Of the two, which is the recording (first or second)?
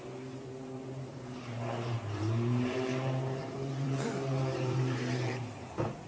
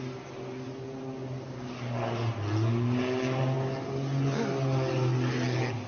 second